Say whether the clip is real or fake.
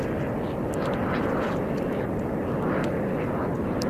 real